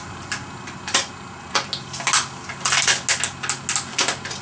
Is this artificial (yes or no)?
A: no